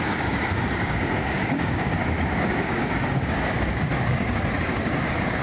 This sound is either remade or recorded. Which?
remade